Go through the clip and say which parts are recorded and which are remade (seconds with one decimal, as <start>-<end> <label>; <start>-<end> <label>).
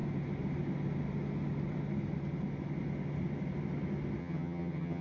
0.0-4.2 recorded; 4.2-5.0 remade